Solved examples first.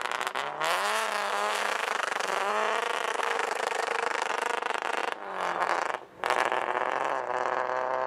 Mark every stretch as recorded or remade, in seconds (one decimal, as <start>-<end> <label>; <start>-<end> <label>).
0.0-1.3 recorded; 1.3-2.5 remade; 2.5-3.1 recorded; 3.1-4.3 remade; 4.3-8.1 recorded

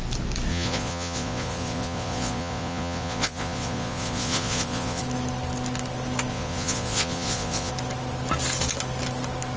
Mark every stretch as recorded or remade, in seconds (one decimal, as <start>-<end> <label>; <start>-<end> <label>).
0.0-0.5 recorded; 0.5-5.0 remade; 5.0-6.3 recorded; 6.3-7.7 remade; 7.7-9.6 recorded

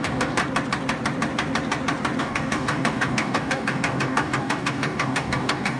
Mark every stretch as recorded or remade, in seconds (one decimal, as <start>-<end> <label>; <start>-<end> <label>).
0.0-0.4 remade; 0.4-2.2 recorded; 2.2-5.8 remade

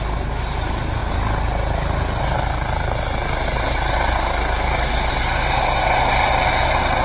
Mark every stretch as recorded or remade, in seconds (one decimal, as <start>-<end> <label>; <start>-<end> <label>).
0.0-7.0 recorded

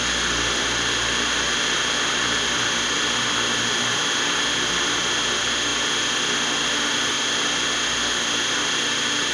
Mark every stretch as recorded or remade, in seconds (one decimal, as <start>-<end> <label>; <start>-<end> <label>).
0.0-9.3 recorded

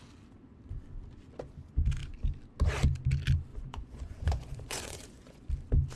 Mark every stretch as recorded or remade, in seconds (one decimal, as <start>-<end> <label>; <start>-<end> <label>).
0.0-3.5 recorded; 3.5-5.5 remade; 5.5-6.0 recorded

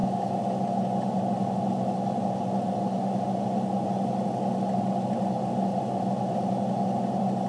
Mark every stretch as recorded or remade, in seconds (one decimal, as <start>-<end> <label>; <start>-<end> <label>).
0.0-7.5 recorded